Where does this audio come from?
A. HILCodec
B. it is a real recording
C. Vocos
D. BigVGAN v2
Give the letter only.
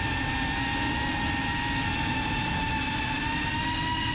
B